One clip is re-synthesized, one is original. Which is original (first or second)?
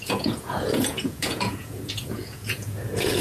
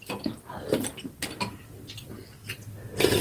second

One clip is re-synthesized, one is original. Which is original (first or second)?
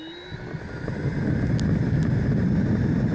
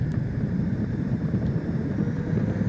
first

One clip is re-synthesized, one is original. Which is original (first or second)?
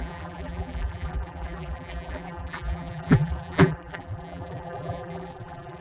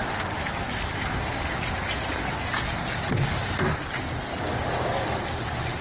second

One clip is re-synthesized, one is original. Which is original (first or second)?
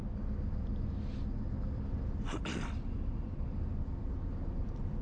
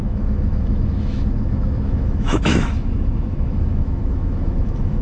first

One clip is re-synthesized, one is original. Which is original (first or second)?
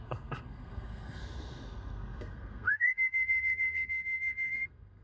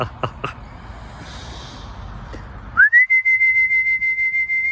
second